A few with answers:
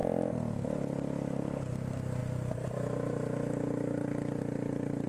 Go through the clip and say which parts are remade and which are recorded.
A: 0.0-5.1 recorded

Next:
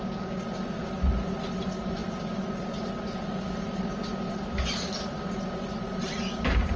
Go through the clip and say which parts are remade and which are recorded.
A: 0.0-6.8 recorded

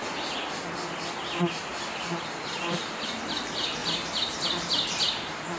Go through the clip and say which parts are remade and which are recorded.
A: 0.0-5.6 recorded